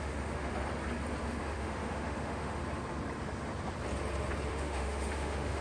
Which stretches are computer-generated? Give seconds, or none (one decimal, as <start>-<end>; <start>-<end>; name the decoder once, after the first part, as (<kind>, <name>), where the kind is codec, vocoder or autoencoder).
0.0-0.5 (autoencoder, DAC-VAE); 1.4-2.6; 4.5-5.6